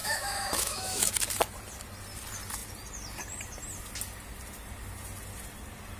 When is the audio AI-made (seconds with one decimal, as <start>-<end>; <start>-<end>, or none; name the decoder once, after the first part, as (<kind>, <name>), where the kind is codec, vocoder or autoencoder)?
0.0-1.1 (autoencoder, DAC-VAE)